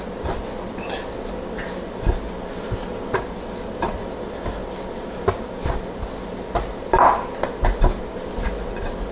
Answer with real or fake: real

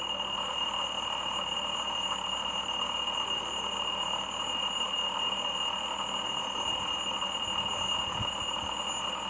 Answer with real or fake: real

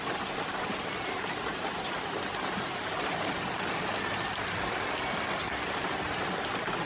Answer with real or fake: real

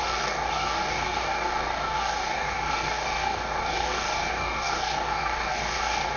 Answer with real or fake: fake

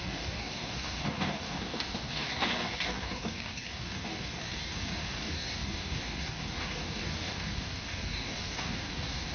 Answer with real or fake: fake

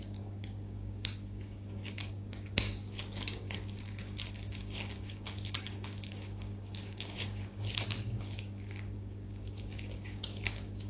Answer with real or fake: fake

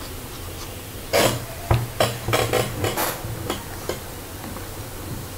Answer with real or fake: real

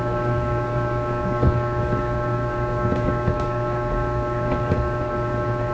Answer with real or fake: fake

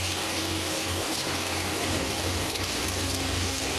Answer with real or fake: fake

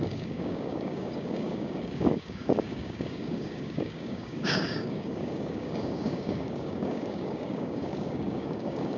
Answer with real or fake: fake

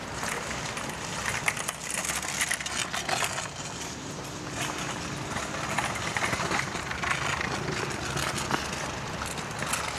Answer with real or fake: real